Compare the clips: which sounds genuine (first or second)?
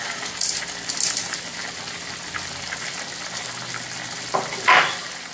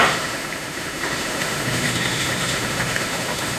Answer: first